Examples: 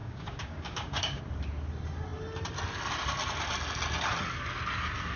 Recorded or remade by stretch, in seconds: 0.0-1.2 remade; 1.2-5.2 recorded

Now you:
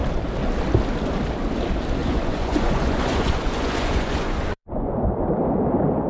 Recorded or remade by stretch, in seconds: 0.0-2.0 recorded; 2.0-5.1 remade; 5.1-6.1 recorded

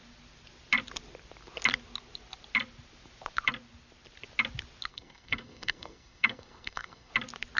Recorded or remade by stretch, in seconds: 0.0-4.9 recorded; 4.9-7.1 remade; 7.1-7.6 recorded

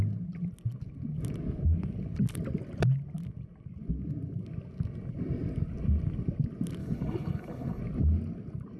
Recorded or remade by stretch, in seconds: 0.0-6.8 recorded; 6.8-7.8 remade; 7.8-8.8 recorded

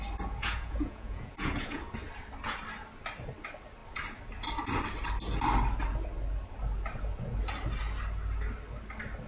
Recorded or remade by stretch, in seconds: 0.0-0.4 recorded; 0.4-1.8 remade; 1.8-9.3 recorded

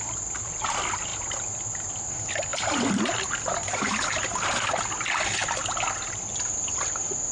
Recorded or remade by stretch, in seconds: 0.0-7.3 recorded

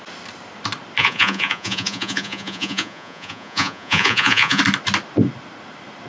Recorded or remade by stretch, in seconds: 0.0-1.0 recorded; 1.0-4.6 remade; 4.6-6.1 recorded

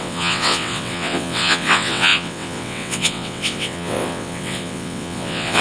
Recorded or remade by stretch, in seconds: 0.0-5.6 remade